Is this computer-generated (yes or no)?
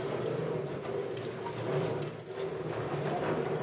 no